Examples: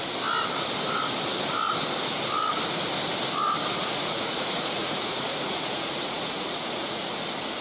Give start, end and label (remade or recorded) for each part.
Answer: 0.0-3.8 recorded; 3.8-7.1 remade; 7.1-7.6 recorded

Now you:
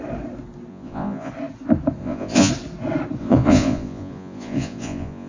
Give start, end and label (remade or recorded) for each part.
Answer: 0.0-0.7 recorded; 0.7-1.3 remade; 1.3-2.0 recorded; 2.0-2.5 remade; 2.5-3.2 recorded; 3.2-5.3 remade

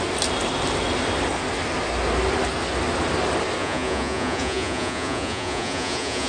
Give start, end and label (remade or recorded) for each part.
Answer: 0.0-3.6 recorded; 3.6-6.3 remade

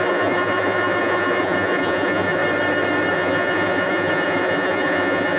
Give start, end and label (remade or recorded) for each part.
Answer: 0.0-2.4 remade; 2.4-3.1 recorded; 3.1-5.4 remade

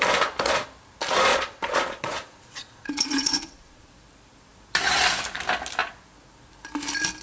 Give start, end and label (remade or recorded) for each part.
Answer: 0.0-1.3 recorded; 1.3-3.9 remade; 3.9-7.2 recorded

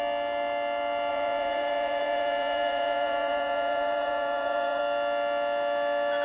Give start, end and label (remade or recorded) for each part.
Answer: 0.0-1.1 recorded; 1.1-4.8 remade; 4.8-6.2 recorded